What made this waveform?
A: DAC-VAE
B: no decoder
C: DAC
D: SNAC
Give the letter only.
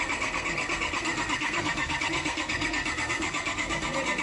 D